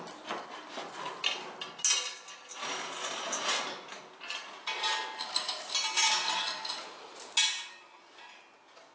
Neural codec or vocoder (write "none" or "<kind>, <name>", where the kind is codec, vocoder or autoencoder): none